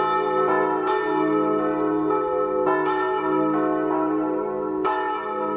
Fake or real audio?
real